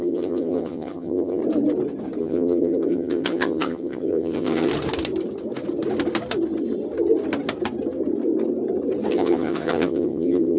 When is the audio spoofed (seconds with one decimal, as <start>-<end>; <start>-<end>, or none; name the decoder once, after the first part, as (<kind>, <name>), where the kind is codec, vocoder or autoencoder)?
0.0-1.4 (vocoder, HiFi-GAN); 2.2-4.7; 9.1-10.6